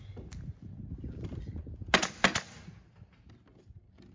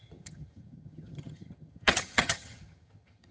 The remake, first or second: second